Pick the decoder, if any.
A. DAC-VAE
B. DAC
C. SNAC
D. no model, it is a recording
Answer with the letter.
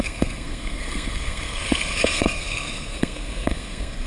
C